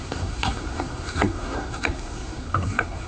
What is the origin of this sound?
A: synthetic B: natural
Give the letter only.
A